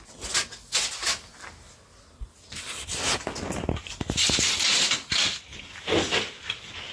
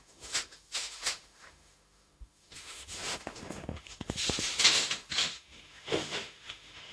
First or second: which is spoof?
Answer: second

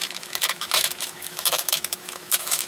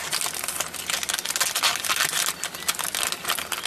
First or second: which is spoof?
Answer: first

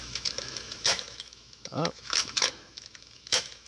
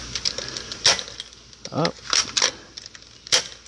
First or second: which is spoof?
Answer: first